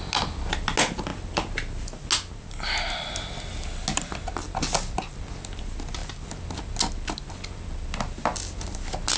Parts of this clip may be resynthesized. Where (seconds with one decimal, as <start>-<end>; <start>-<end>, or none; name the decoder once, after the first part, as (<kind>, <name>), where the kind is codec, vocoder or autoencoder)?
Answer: none